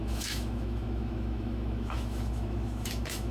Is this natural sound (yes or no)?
no